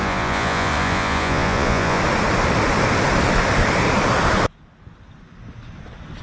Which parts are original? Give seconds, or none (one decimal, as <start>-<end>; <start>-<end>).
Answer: 2.0-6.2